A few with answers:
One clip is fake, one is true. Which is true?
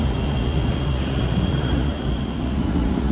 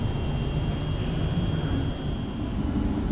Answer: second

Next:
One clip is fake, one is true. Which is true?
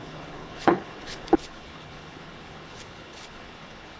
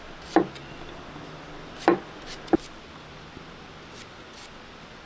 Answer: second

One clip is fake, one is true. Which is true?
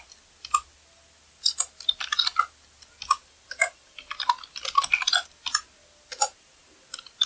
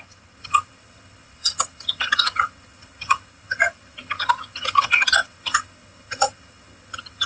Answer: first